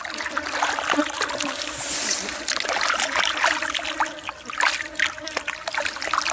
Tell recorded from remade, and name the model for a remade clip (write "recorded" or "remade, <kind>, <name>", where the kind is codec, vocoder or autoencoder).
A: recorded